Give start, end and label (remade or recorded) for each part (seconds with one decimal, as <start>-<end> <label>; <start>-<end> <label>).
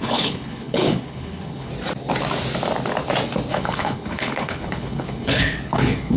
0.0-1.7 remade; 1.7-3.5 recorded; 3.5-6.2 remade